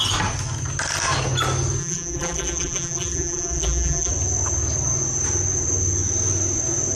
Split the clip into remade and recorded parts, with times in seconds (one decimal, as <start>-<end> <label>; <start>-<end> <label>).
0.0-1.8 recorded; 1.8-4.1 remade; 4.1-6.9 recorded